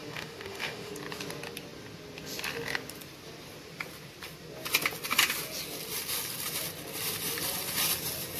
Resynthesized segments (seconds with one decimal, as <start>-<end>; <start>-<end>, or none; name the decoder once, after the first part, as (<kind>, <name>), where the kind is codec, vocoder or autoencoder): 0.0-0.9 (autoencoder, DAC-VAE)